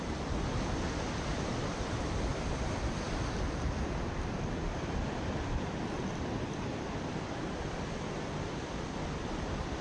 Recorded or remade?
remade